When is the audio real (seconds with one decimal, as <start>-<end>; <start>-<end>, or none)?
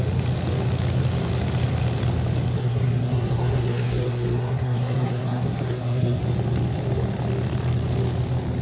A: 0.0-2.6; 6.2-8.6